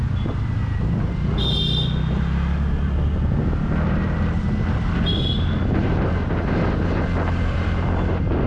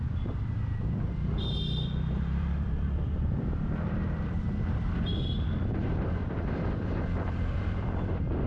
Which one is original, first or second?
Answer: first